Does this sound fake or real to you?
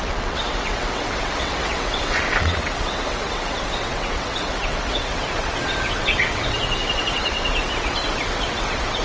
fake